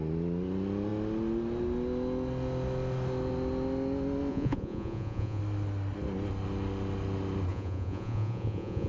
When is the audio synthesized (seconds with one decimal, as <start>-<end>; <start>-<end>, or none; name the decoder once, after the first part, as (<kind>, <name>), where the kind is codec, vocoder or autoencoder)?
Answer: 4.3-5.4 (vocoder, Vocos); 7.5-8.9